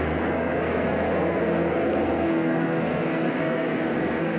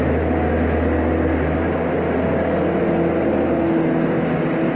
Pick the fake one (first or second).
first